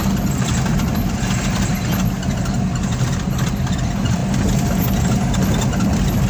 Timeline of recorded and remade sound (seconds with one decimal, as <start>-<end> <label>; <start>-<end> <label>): 0.0-6.3 recorded